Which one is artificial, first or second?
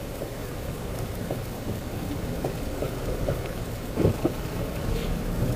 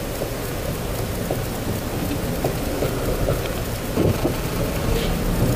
first